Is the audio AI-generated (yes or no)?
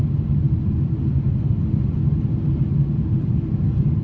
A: no